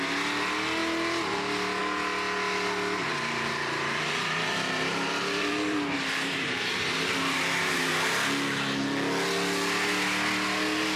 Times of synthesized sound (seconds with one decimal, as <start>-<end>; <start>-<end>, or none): 3.1-7.9